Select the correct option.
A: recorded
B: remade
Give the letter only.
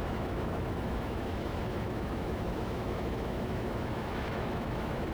B